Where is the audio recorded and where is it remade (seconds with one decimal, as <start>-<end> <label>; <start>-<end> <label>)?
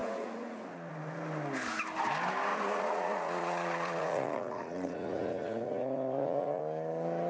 0.0-0.9 remade; 0.9-2.5 recorded; 2.5-6.6 remade; 6.6-7.3 recorded